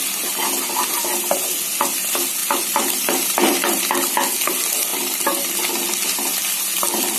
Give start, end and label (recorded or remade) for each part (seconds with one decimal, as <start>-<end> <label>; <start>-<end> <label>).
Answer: 0.0-2.4 recorded; 2.4-3.8 remade; 3.8-4.9 recorded; 4.9-5.5 remade; 5.5-7.2 recorded